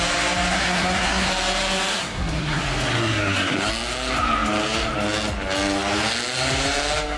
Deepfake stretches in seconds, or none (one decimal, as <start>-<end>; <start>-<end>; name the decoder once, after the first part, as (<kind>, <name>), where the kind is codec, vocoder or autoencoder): 0.5-1.3 (codec, SNAC); 1.9-2.6; 3.0-3.7